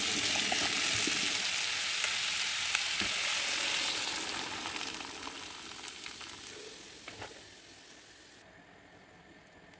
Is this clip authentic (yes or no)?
yes